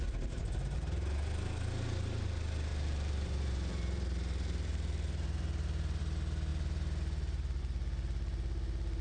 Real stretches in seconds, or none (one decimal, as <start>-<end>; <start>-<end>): 0.0-2.7; 6.0-9.0